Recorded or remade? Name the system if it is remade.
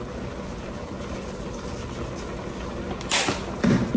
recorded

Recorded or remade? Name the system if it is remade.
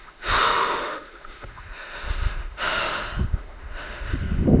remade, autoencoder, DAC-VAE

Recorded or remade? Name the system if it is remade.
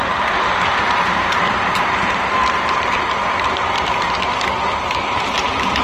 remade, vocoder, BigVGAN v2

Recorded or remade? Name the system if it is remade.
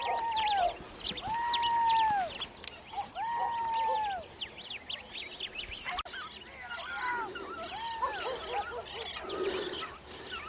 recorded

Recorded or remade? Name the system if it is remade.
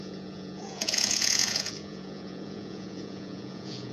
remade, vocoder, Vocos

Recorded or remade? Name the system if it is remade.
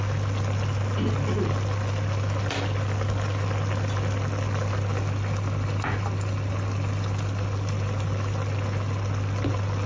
recorded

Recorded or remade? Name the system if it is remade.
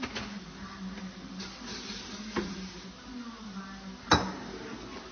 recorded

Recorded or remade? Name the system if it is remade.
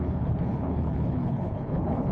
remade, codec, HILCodec